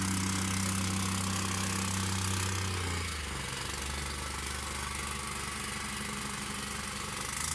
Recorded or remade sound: recorded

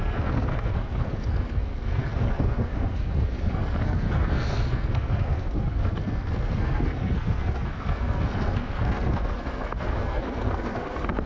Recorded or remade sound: remade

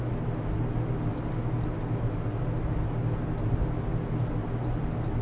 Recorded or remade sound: recorded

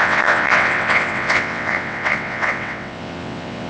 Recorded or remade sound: remade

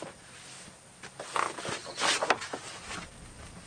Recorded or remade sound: recorded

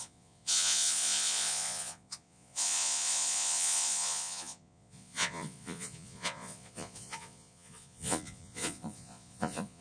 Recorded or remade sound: remade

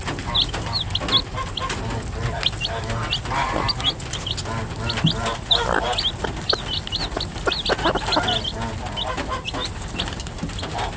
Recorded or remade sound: recorded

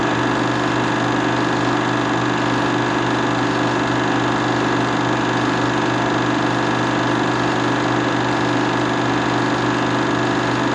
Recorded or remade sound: recorded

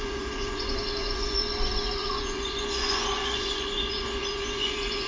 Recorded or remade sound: remade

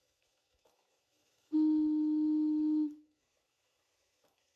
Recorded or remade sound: remade